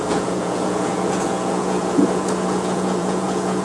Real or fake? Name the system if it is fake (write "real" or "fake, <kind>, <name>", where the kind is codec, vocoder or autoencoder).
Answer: fake, vocoder, Vocos